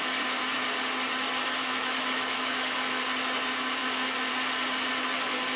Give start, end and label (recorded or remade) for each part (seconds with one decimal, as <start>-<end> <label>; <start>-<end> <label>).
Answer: 0.0-1.6 recorded; 1.6-3.0 remade; 3.0-5.6 recorded